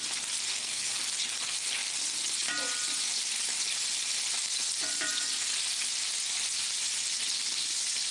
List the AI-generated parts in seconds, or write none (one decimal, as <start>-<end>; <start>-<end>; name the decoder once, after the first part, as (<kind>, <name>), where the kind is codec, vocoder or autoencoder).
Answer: 0.5-1.0 (codec, SNAC)